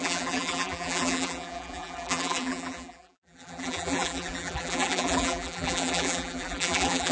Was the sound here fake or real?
fake